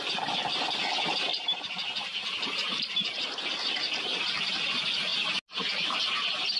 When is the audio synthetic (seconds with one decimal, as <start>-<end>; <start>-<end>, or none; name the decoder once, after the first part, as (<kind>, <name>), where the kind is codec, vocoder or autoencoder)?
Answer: 1.3-4.2 (vocoder, BigVGAN v2)